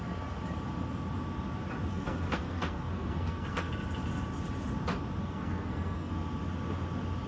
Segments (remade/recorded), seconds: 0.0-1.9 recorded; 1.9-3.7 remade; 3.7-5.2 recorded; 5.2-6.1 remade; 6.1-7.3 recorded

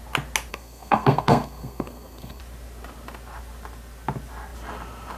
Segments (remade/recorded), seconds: 0.0-0.5 recorded; 0.5-2.4 remade; 2.4-5.2 recorded